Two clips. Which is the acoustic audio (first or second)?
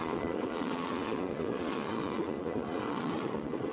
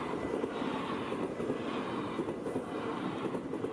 second